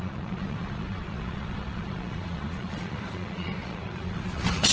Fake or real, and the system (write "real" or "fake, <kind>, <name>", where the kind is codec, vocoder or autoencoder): fake, vocoder, Vocos